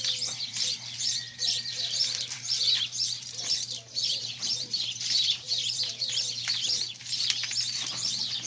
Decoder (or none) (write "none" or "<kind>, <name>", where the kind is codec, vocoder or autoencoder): vocoder, BigVGAN v2